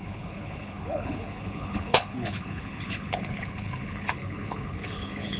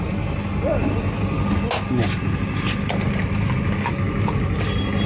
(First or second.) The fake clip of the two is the first